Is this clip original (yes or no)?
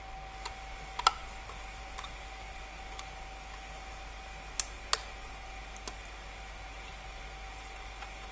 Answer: yes